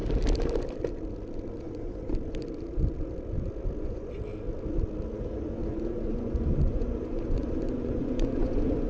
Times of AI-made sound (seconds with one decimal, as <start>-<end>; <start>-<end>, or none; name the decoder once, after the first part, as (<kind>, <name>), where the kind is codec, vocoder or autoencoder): 1.6-2.1 (vocoder, Vocos); 3.8-4.2; 5.2-8.9

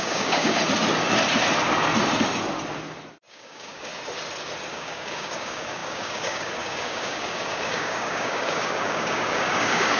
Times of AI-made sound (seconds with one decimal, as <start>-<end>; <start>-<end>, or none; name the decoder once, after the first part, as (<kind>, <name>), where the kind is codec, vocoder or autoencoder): 0.0-0.6 (codec, DAC); 3.3-3.9; 4.7-10.0

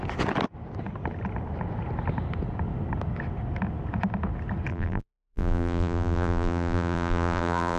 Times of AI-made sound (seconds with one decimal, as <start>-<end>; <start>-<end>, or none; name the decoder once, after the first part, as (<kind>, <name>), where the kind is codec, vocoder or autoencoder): 4.7-7.8 (vocoder, BigVGAN v2)

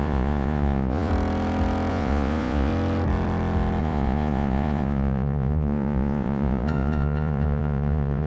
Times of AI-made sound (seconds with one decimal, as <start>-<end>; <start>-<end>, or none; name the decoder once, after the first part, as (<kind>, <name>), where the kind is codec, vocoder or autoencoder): 0.0-1.1 (vocoder, Vocos); 1.9-2.7; 3.8-8.3

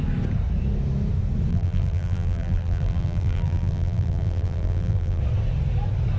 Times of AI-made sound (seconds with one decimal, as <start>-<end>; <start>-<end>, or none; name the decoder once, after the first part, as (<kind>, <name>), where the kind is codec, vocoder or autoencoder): 1.5-5.2 (vocoder, BigVGAN v2)

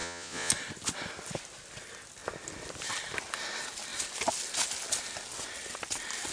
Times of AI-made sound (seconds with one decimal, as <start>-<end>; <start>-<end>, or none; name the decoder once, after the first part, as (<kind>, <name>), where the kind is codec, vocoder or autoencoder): 0.0-0.5 (vocoder, Vocos)